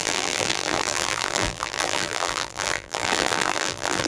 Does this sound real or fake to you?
fake